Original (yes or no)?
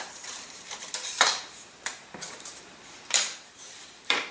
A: no